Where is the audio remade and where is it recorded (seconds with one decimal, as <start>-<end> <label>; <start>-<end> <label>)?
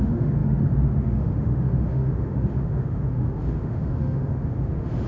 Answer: 0.0-5.1 remade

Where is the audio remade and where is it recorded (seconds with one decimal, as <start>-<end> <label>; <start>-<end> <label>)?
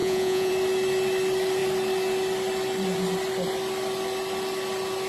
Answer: 0.0-0.5 remade; 0.5-5.1 recorded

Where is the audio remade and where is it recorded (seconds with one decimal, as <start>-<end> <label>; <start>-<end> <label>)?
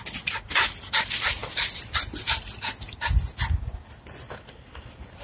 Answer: 0.0-5.2 recorded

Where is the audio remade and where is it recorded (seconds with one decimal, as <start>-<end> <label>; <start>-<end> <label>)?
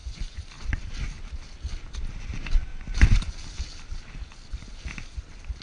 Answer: 0.0-0.5 remade; 0.5-5.6 recorded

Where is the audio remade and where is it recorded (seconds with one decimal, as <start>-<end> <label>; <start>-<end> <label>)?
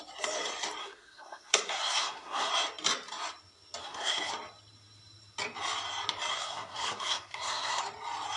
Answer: 0.0-0.8 recorded; 0.8-2.5 remade; 2.5-3.8 recorded; 3.8-4.3 remade; 4.3-6.3 recorded; 6.3-7.8 remade; 7.8-8.4 recorded